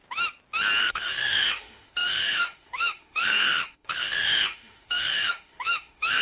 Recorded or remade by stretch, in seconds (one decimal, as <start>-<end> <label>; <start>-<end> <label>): 0.0-0.8 recorded; 0.8-6.2 remade